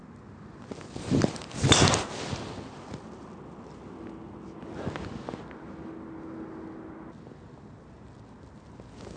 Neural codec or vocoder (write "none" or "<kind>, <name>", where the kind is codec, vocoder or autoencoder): none